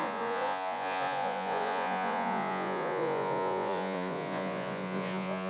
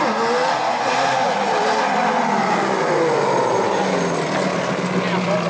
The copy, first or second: first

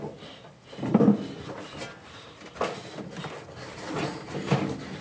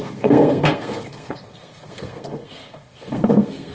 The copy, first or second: second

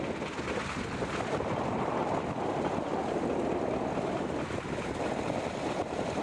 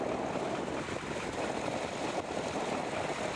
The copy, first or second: second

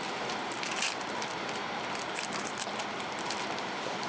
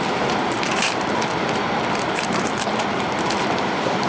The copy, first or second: second